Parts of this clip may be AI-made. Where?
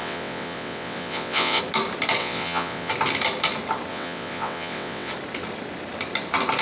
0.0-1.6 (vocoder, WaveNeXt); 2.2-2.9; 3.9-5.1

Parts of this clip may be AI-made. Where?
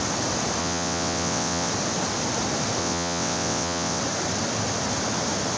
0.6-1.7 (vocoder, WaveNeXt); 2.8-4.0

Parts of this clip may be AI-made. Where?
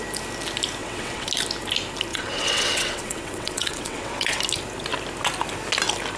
0.8-1.3 (vocoder, WaveNeXt); 2.1-4.4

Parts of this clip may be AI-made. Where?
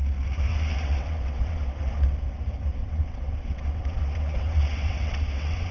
0.5-1.9 (vocoder, WaveNeXt); 2.8-5.7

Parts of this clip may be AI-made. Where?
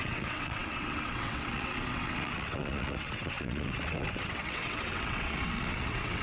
0.0-6.2 (vocoder, WaveNeXt)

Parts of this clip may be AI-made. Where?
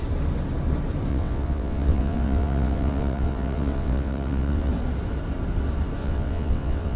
1.1-4.7 (vocoder, WaveNeXt); 6.0-7.0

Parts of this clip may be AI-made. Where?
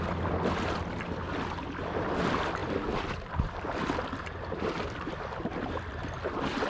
none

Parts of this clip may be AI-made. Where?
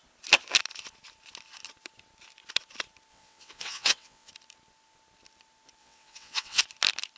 3.1-4.3 (vocoder, WaveNeXt); 5.8-6.6